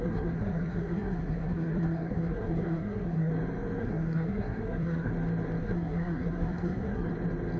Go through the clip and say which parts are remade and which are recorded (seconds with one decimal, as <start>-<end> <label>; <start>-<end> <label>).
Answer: 0.0-3.3 remade; 3.3-3.8 recorded; 3.8-5.1 remade; 5.1-5.6 recorded; 5.6-7.1 remade; 7.1-7.6 recorded

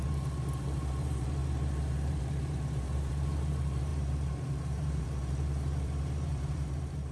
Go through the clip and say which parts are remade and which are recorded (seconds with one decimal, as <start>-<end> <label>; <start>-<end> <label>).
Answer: 0.0-7.1 remade

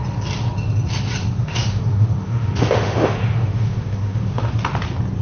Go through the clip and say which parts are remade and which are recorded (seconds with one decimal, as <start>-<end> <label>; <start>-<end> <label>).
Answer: 0.0-1.4 recorded; 1.4-4.5 remade; 4.5-5.2 recorded